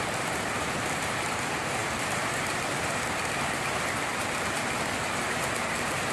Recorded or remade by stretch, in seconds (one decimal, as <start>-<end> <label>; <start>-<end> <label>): 0.0-6.1 recorded